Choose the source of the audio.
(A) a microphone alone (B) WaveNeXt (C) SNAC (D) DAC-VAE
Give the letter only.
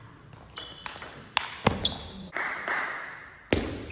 A